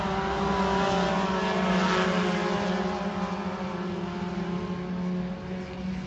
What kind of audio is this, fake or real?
real